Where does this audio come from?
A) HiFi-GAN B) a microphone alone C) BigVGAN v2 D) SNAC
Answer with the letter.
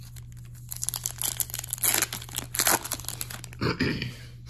B